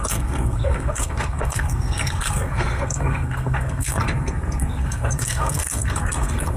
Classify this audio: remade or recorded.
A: remade